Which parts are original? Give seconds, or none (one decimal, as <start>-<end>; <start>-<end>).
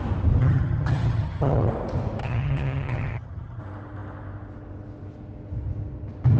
0.0-0.4; 1.7-2.2; 3.6-6.4